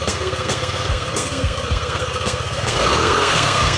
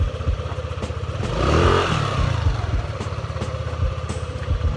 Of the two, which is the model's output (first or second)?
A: first